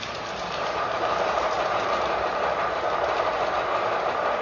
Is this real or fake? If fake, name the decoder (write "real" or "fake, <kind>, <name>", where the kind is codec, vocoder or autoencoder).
fake, vocoder, BigVGAN v2